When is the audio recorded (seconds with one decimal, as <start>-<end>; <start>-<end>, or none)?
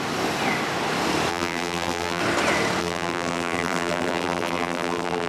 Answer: 0.0-1.3; 2.2-2.8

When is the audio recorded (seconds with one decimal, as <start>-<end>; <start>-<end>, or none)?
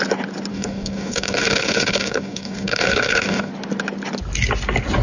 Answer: 0.0-0.5; 3.5-5.0